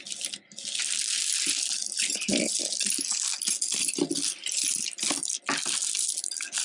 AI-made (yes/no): no